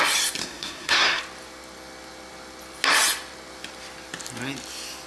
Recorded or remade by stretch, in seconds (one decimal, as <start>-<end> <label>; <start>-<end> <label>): 0.0-0.4 recorded; 0.4-1.2 remade; 1.2-5.1 recorded